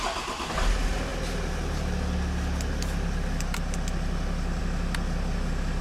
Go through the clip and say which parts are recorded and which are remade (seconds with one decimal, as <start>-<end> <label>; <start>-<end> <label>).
0.0-5.8 recorded